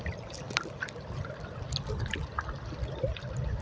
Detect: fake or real real